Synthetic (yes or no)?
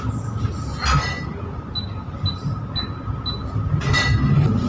no